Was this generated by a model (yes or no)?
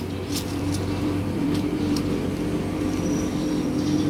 yes